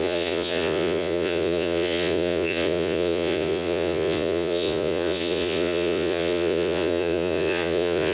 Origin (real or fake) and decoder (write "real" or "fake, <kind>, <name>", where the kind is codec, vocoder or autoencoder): fake, vocoder, Vocos